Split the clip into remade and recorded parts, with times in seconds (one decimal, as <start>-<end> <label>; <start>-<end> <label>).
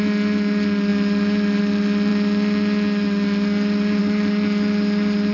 0.0-5.3 recorded